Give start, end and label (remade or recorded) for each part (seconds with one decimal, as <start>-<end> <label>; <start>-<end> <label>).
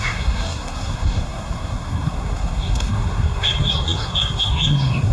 0.0-5.1 remade